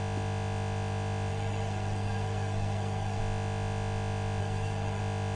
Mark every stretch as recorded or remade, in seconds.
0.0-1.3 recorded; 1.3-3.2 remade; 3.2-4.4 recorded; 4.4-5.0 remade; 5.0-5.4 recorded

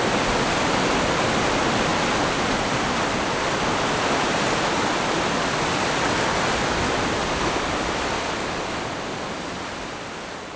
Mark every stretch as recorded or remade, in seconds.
0.0-10.6 recorded

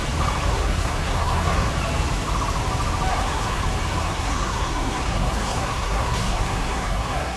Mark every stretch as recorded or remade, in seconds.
0.0-0.5 recorded; 0.5-1.7 remade; 1.7-3.1 recorded; 3.1-3.6 remade; 3.6-4.0 recorded; 4.0-7.4 remade

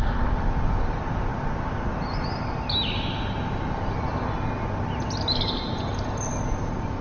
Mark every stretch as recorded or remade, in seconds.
0.0-7.0 recorded